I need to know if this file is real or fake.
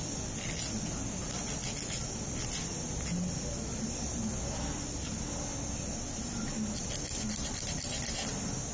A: real